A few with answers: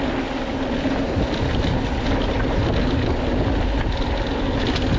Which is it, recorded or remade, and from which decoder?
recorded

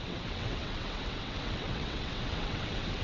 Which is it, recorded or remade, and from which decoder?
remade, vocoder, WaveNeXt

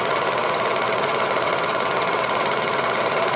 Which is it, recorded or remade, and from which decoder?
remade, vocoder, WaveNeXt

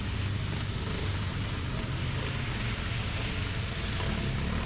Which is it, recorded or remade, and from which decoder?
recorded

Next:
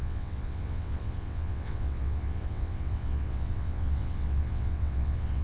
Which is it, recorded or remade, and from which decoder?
remade, vocoder, WaveNeXt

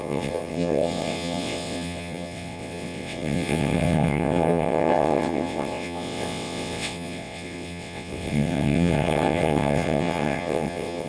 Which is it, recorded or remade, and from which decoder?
remade, vocoder, WaveNeXt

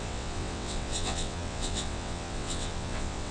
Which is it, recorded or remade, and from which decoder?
remade, vocoder, WaveNeXt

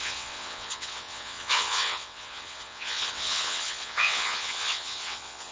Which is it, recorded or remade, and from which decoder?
remade, vocoder, WaveNeXt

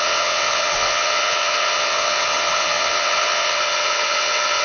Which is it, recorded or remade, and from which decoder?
remade, vocoder, WaveNeXt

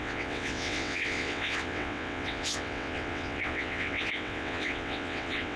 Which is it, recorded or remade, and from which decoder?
remade, vocoder, WaveNeXt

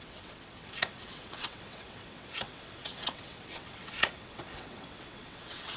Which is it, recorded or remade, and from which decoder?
remade, vocoder, WaveNeXt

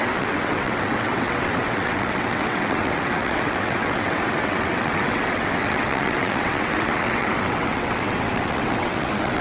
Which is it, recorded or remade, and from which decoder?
remade, vocoder, WaveNeXt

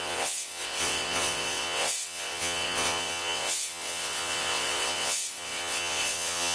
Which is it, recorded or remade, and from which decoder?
remade, vocoder, WaveNeXt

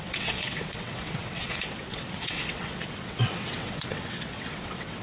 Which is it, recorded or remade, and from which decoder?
remade, vocoder, WaveNeXt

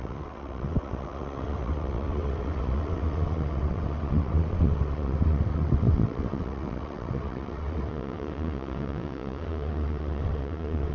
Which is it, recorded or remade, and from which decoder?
remade, vocoder, WaveNeXt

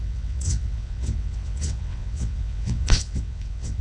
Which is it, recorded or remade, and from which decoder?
remade, vocoder, WaveNeXt